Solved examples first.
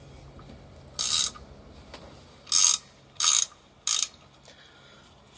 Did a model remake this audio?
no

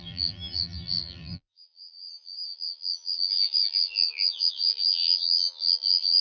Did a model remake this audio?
yes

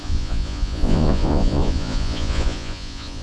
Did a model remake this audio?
yes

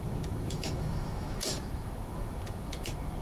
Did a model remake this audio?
yes